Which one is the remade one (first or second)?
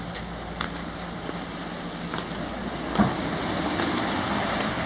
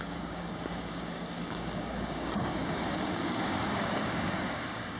second